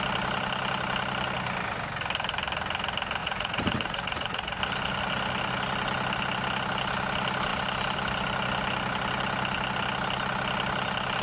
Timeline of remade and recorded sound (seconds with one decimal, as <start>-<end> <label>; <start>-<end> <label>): 0.0-3.2 recorded; 3.2-4.6 remade; 4.6-11.2 recorded